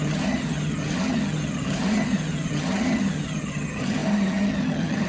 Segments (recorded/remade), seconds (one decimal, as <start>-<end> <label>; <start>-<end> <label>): 0.0-5.1 remade

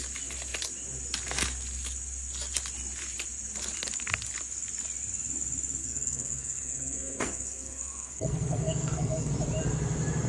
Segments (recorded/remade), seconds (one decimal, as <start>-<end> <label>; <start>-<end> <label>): 0.0-5.8 recorded; 5.8-9.3 remade; 9.3-10.3 recorded